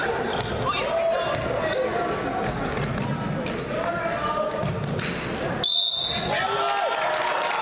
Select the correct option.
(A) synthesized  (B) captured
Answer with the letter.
B